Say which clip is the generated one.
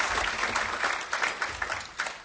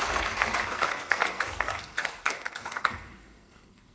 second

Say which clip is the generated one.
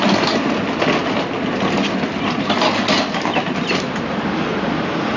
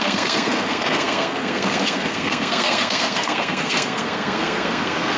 second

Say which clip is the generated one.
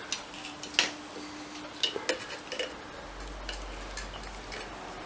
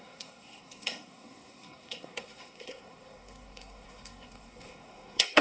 second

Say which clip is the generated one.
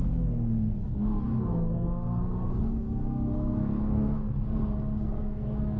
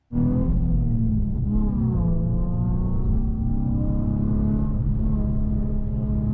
first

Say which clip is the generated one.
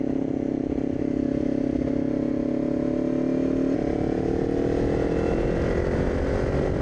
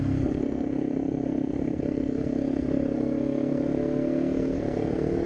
second